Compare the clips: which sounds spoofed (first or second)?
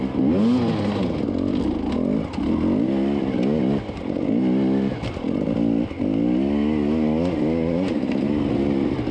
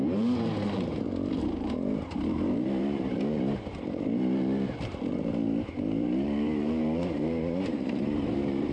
second